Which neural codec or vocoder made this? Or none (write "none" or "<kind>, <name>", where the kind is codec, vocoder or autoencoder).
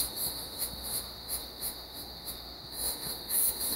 autoencoder, DAC-VAE